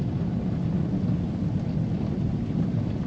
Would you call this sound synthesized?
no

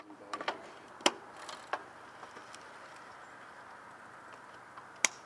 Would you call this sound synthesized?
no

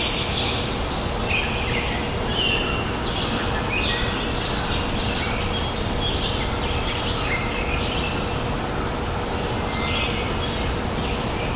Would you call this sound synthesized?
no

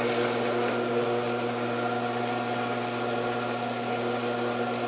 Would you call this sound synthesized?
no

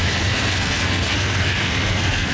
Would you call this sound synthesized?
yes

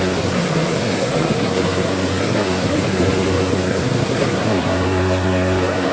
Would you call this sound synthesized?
yes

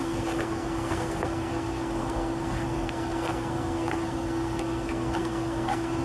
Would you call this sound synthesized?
yes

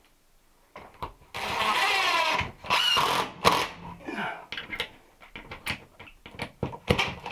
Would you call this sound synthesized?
no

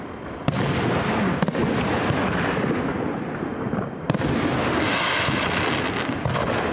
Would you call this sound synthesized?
no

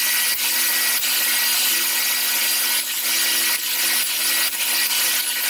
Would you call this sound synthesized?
no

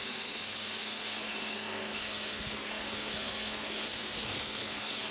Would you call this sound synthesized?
yes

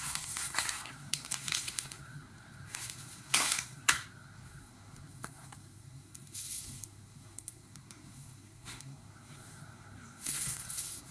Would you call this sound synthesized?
yes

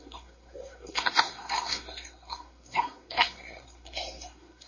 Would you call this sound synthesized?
yes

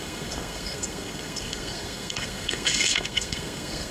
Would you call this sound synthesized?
yes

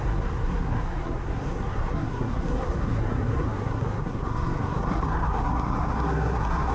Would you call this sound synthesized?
yes